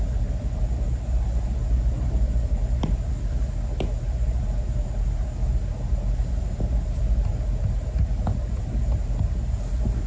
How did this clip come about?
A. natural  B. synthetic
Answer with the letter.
A